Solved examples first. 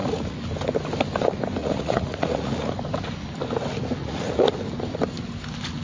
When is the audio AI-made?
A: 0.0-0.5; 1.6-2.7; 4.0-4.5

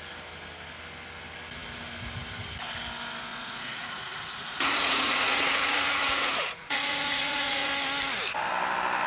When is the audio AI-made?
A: 3.3-7.7

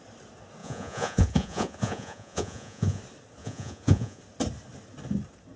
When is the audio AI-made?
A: 0.6-3.0; 3.4-4.2